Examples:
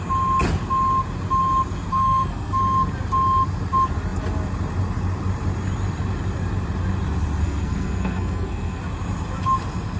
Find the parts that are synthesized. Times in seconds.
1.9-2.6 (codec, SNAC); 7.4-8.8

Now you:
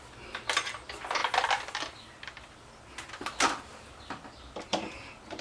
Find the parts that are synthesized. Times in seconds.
none